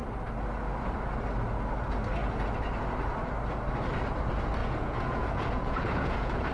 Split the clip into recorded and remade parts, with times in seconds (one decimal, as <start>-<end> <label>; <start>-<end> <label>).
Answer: 0.0-4.6 recorded; 4.6-6.5 remade